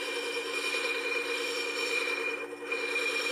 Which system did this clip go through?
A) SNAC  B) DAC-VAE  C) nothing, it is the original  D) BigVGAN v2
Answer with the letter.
C